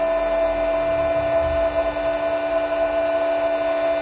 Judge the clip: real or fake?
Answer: real